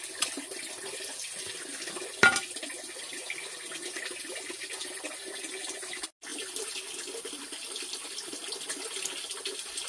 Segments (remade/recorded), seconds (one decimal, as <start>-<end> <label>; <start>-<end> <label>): 0.0-9.9 recorded

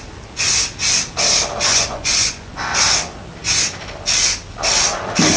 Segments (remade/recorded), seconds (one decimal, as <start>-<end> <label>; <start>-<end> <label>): 0.0-1.7 recorded; 1.7-2.6 remade; 2.6-5.4 recorded

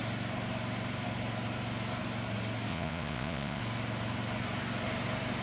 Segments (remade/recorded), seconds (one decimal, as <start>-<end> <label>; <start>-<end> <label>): 0.0-2.7 recorded; 2.7-3.6 remade; 3.6-5.4 recorded

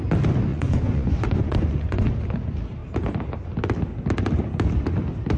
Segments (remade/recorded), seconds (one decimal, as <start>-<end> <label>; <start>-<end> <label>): 0.0-0.5 recorded; 0.5-2.1 remade; 2.1-5.4 recorded

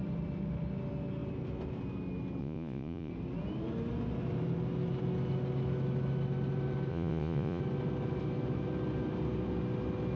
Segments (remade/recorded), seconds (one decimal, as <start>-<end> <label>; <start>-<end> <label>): 0.0-2.4 recorded; 2.4-3.1 remade; 3.1-6.9 recorded; 6.9-7.6 remade; 7.6-10.2 recorded